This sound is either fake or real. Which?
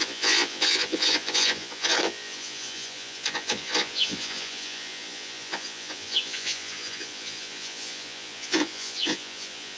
fake